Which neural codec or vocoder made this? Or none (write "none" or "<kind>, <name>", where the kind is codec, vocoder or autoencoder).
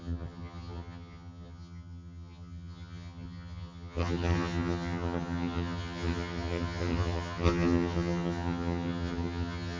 vocoder, HiFi-GAN